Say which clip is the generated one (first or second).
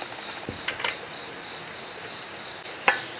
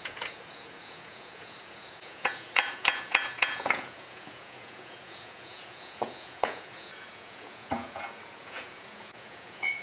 second